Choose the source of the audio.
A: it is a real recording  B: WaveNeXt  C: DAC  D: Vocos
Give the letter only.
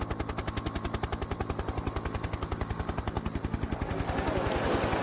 A